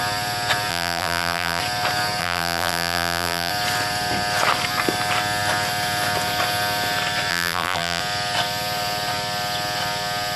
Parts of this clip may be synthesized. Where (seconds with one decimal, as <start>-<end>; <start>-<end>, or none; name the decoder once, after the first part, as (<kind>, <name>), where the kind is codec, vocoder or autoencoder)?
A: 0.7-1.6 (vocoder, BigVGAN v2); 2.2-3.5; 7.3-8.0